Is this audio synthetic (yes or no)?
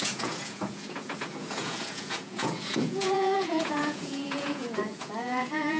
yes